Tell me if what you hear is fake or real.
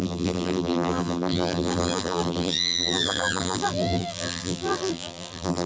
fake